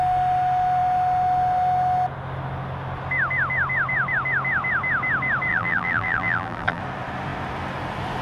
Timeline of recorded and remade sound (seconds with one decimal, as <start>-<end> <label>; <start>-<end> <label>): 0.0-5.5 recorded; 5.5-6.8 remade; 6.8-8.2 recorded